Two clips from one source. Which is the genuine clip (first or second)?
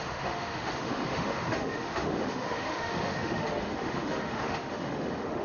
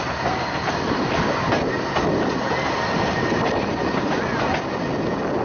second